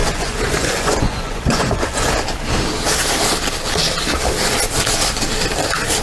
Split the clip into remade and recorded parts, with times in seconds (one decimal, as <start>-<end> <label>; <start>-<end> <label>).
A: 0.0-2.1 remade; 2.1-6.0 recorded